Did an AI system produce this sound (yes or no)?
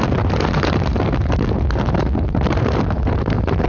yes